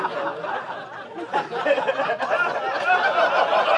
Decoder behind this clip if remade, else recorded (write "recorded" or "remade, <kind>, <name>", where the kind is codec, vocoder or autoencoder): recorded